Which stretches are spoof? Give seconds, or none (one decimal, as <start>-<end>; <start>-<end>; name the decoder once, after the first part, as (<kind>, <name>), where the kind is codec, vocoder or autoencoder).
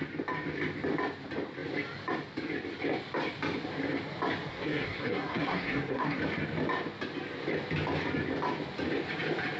4.5-6.2 (codec, SNAC)